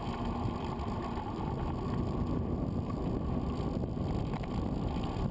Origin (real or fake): real